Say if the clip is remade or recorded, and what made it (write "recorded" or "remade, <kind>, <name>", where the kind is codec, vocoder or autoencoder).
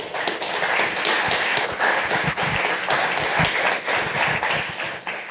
recorded